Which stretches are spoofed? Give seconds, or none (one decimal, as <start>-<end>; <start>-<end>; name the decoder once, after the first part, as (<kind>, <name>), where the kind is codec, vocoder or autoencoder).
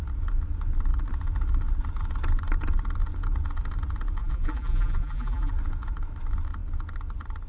4.2-5.5 (vocoder, BigVGAN v2)